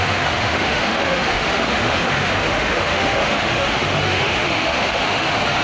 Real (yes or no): no